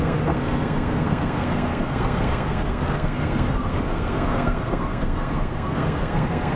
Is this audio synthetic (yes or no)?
yes